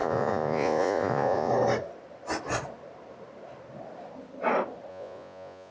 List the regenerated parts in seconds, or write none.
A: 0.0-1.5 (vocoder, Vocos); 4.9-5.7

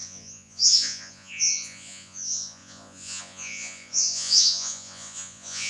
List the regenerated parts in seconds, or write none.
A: 0.0-5.7 (vocoder, Vocos)

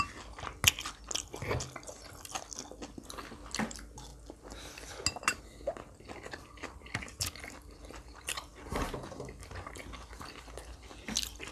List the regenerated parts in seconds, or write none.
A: none